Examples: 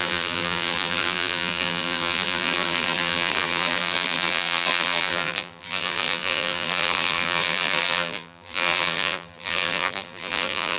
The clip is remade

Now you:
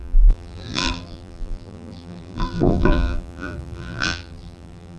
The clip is remade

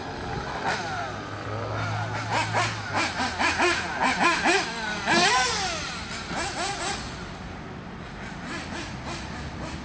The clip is recorded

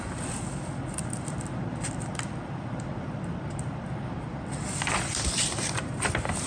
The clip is remade